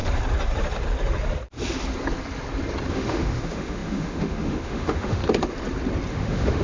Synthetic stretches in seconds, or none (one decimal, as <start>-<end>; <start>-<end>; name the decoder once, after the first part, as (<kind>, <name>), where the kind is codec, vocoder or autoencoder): 2.9-5.2 (autoencoder, DAC-VAE); 6.1-6.6